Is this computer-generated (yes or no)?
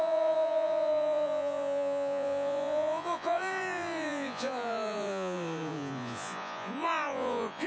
yes